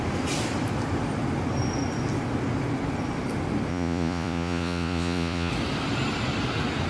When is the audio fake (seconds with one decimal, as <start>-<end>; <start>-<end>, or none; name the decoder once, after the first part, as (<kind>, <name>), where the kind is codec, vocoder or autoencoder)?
3.7-5.5 (vocoder, Vocos)